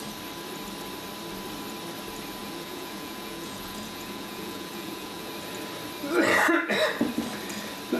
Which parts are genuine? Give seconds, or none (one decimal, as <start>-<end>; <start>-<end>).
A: 0.0-2.4; 5.3-8.0